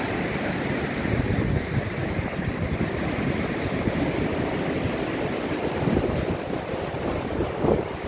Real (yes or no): no